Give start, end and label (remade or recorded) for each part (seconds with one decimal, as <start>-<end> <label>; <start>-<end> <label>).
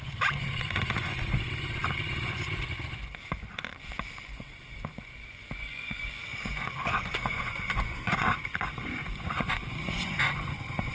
0.0-10.9 remade